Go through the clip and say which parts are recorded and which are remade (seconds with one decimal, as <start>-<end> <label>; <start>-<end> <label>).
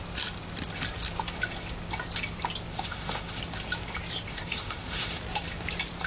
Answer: 0.0-2.7 recorded; 2.7-3.4 remade; 3.4-4.3 recorded; 4.3-5.2 remade; 5.2-6.1 recorded